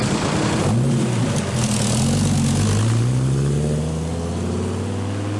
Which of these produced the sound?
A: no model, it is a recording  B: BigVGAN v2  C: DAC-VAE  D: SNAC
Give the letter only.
A